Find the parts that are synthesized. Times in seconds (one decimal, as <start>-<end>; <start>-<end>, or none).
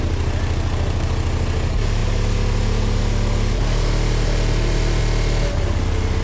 none